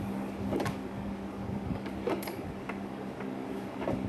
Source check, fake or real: fake